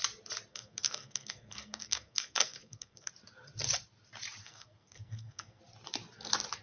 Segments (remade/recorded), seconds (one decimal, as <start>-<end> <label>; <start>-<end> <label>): 0.0-0.5 recorded; 0.5-3.1 remade; 3.1-4.4 recorded; 4.4-5.6 remade; 5.6-6.6 recorded